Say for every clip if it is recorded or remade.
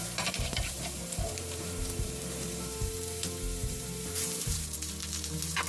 remade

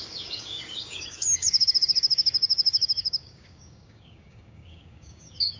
remade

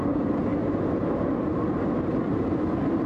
remade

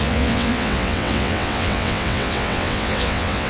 remade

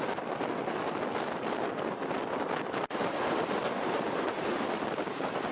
recorded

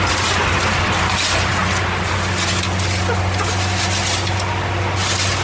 recorded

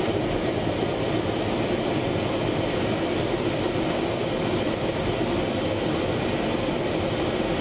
recorded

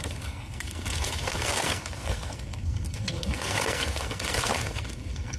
remade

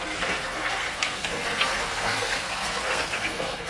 remade